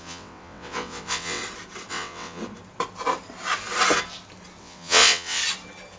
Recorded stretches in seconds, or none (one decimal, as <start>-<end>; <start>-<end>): 1.4-1.9; 2.4-4.6; 5.4-6.0